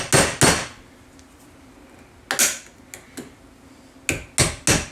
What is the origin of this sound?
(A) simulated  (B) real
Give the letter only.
B